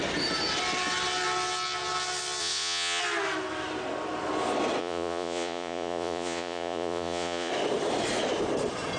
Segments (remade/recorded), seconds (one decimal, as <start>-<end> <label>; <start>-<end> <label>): 0.0-2.4 recorded; 2.4-3.0 remade; 3.0-4.8 recorded; 4.8-7.5 remade; 7.5-9.0 recorded